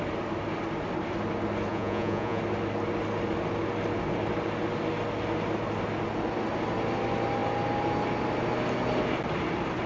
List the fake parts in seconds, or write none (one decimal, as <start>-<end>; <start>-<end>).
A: 1.7-2.4